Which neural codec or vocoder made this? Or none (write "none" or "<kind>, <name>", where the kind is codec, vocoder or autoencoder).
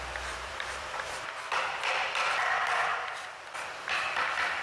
vocoder, BigVGAN v2